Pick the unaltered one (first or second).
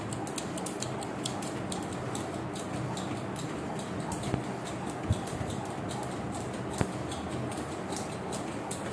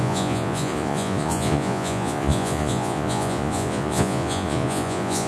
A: first